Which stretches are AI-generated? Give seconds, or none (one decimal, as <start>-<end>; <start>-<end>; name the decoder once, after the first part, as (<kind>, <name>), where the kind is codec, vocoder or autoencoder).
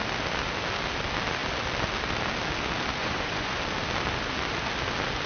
3.0-3.6 (vocoder, Vocos)